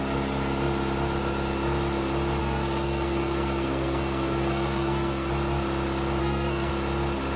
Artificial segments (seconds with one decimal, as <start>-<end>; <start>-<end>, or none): 2.4-5.3; 6.2-6.7